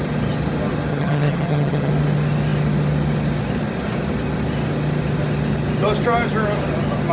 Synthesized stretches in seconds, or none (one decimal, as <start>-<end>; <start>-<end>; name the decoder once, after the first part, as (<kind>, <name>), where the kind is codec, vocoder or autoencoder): 0.9-1.9 (vocoder, HiFi-GAN)